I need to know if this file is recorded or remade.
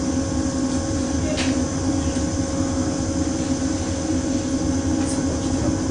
recorded